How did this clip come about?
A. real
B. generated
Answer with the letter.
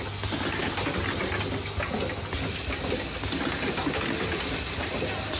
A